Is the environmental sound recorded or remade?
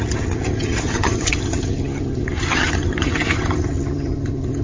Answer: remade